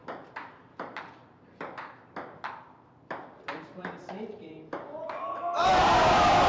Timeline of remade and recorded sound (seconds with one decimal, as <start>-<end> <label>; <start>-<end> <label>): 0.0-6.5 recorded